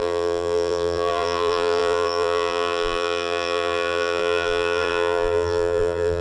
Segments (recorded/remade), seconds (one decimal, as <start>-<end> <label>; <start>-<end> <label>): 0.0-6.2 remade